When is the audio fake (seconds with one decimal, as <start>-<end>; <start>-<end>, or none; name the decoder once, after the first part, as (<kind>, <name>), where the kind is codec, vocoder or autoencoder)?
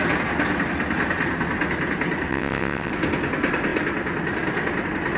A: 2.3-2.9 (vocoder, WaveNeXt)